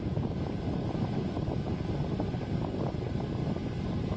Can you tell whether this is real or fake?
real